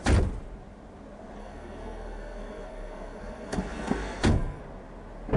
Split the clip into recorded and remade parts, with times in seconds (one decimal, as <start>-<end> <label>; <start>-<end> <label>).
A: 0.0-1.4 recorded; 1.4-4.6 remade; 4.6-5.4 recorded